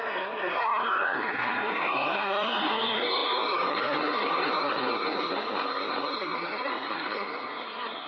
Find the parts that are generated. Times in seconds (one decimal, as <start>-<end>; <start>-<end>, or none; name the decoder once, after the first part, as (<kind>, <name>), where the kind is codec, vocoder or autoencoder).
0.0-8.1 (codec, SNAC)